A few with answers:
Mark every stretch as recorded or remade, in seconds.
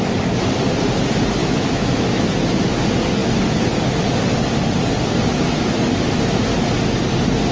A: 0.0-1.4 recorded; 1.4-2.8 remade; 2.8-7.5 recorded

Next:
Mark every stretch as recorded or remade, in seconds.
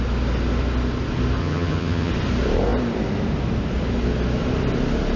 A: 0.0-1.4 recorded; 1.4-2.1 remade; 2.1-5.2 recorded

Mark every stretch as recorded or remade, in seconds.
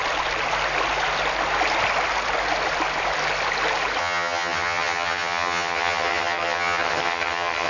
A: 0.0-4.0 recorded; 4.0-7.7 remade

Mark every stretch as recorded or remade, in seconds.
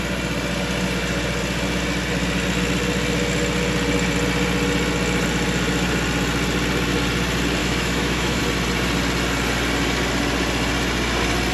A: 0.0-7.6 recorded; 7.6-8.4 remade; 8.4-11.5 recorded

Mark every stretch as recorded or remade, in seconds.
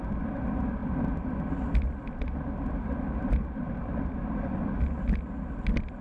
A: 0.0-6.0 recorded